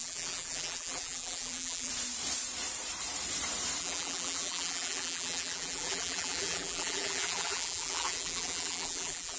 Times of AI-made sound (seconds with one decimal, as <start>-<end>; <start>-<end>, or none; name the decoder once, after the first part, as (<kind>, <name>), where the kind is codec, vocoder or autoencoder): 0.0-1.9 (vocoder, BigVGAN v2); 3.8-9.4